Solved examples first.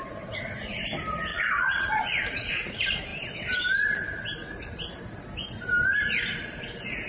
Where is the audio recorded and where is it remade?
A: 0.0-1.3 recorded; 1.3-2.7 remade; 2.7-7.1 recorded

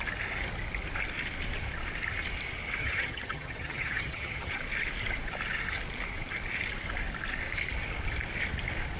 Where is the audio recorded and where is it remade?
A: 0.0-2.8 recorded; 2.8-4.5 remade; 4.5-9.0 recorded

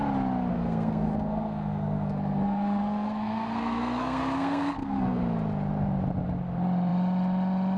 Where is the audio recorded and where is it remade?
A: 0.0-0.5 recorded; 0.5-5.2 remade; 5.2-7.8 recorded

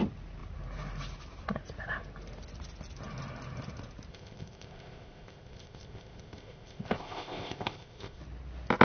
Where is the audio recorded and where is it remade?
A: 0.0-4.1 recorded; 4.1-8.2 remade; 8.2-8.8 recorded